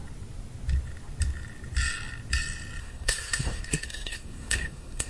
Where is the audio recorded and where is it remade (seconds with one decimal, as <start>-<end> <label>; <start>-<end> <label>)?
0.0-2.8 recorded; 2.8-5.1 remade

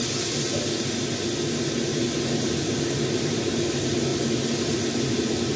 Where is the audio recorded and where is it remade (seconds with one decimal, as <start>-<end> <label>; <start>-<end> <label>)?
0.0-5.6 recorded

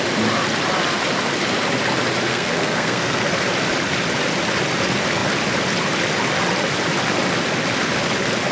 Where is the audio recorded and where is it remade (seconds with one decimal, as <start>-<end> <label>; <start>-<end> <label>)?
0.0-2.3 recorded; 2.3-3.3 remade; 3.3-8.5 recorded

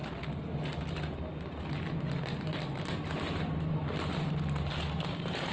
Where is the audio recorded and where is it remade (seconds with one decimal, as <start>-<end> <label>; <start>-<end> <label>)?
0.0-5.5 recorded

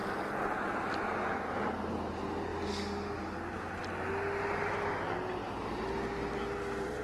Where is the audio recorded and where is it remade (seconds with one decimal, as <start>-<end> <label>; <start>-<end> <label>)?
0.0-7.0 recorded

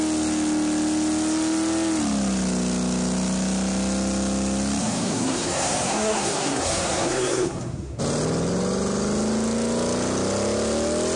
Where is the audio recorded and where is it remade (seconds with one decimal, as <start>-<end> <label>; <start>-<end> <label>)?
0.0-4.8 recorded; 4.8-8.0 remade; 8.0-11.2 recorded